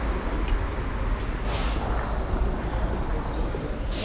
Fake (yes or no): no